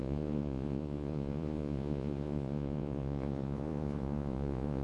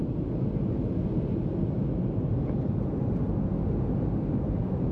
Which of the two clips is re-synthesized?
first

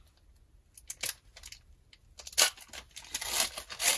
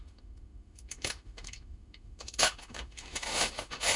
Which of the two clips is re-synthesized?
second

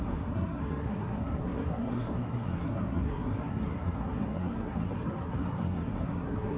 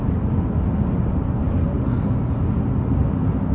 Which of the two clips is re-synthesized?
first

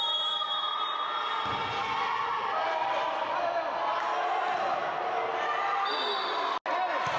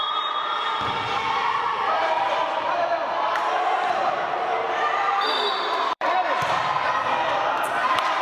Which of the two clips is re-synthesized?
second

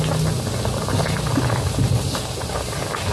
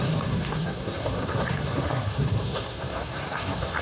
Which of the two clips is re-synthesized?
second